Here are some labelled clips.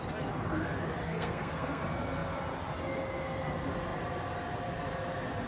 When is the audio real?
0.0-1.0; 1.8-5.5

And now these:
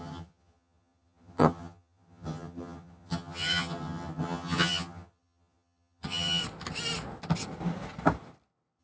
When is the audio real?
6.4-8.8